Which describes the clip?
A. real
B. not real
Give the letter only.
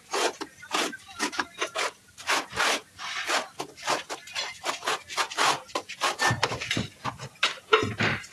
A